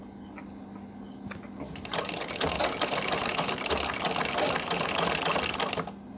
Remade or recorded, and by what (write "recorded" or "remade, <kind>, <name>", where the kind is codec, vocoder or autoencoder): recorded